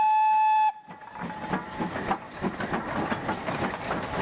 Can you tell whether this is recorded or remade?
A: recorded